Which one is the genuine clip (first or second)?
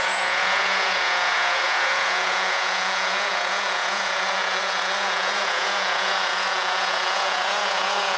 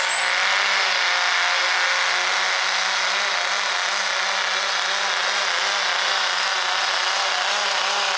second